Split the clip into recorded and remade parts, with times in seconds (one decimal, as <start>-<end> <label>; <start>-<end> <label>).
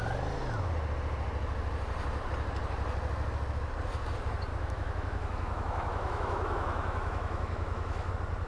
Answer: 0.0-4.5 recorded; 4.5-8.1 remade; 8.1-8.5 recorded